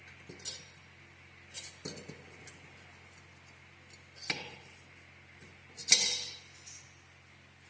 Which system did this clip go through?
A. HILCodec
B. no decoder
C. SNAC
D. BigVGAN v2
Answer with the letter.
B